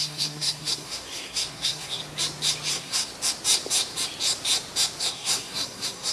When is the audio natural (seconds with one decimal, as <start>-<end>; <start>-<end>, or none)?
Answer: 2.0-2.7; 3.1-5.0